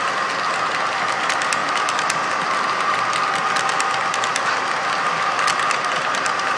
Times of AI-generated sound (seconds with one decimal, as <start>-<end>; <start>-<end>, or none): none